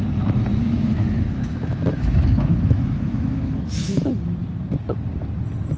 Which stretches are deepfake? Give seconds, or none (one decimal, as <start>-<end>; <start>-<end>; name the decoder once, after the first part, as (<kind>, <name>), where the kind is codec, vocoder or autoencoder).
0.5-4.0 (autoencoder, DAC-VAE)